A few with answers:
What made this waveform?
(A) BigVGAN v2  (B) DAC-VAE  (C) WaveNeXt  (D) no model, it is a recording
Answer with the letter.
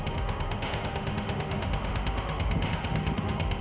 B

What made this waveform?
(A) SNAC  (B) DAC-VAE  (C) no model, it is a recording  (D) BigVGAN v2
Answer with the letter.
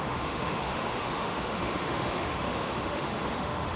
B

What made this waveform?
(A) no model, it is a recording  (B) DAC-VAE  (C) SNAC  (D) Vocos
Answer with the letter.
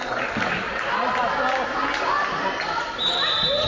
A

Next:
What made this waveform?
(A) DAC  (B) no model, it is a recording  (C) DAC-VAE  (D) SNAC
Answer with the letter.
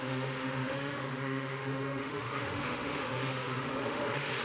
C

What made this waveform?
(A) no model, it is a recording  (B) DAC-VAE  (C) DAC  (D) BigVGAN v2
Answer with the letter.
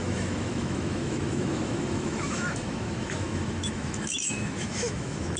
B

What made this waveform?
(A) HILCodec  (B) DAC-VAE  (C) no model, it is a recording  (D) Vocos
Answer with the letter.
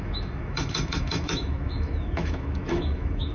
B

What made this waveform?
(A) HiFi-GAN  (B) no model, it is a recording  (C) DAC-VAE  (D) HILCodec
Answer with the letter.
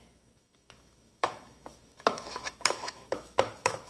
C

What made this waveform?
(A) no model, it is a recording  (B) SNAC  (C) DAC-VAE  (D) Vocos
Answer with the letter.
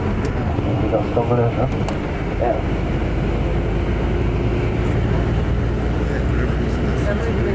A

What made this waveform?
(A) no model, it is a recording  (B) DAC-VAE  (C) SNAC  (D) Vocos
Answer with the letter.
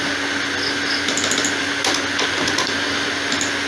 A